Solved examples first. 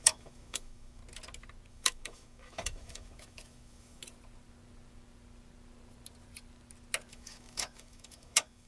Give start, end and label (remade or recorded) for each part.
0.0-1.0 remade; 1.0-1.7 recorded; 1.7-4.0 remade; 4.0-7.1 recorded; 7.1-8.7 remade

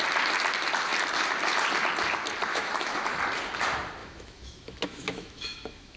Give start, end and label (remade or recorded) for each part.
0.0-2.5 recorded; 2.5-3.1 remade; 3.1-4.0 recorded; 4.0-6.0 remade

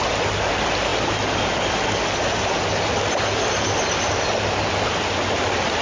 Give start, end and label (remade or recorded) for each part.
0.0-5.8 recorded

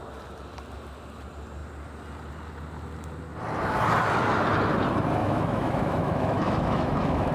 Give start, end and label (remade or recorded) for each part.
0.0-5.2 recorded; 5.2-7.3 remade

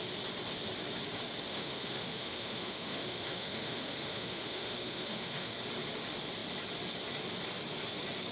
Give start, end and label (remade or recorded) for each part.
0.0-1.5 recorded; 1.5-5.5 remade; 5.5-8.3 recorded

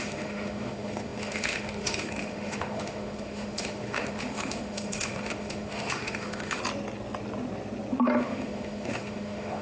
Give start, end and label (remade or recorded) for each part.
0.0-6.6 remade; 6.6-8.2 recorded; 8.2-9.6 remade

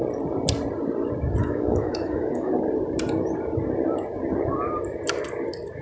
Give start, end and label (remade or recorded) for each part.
0.0-1.4 recorded; 1.4-2.5 remade; 2.5-5.8 recorded